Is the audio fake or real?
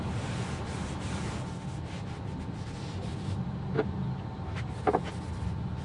real